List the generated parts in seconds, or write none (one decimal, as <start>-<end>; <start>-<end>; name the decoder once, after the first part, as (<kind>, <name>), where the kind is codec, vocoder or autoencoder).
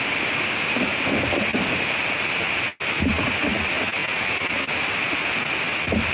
none